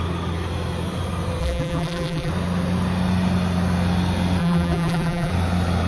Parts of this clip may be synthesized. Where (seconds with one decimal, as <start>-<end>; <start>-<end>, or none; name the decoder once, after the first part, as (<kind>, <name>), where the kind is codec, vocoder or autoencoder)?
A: 1.4-2.3 (vocoder, BigVGAN v2); 4.4-5.3